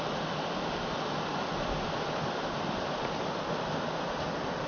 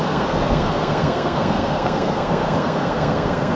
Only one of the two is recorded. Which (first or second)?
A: first